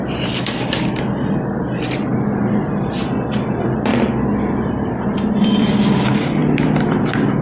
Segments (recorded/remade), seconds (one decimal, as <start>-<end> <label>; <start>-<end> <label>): 0.0-7.4 recorded